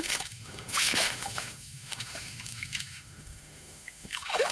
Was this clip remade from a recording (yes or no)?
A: yes